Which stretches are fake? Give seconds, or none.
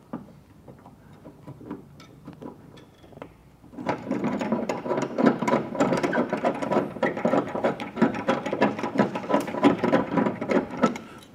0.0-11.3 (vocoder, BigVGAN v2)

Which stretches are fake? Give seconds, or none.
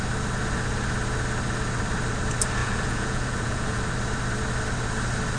2.6-3.8 (vocoder, Vocos)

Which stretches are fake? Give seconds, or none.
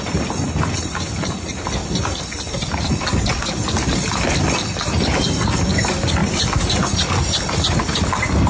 none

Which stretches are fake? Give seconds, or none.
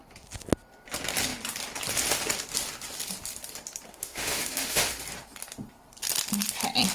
3.9-4.9 (autoencoder, DAC-VAE)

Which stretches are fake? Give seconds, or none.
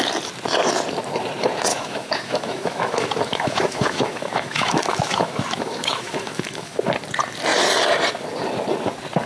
1.7-6.8 (autoencoder, DAC-VAE)